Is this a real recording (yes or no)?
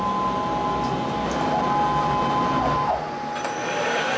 yes